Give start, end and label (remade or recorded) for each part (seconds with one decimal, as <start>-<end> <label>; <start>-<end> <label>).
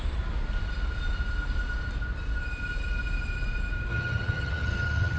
0.0-3.9 recorded; 3.9-5.2 remade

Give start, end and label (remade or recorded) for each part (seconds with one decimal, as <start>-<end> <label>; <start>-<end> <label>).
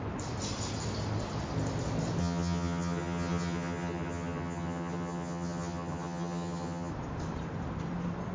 0.0-2.2 recorded; 2.2-6.9 remade; 6.9-8.3 recorded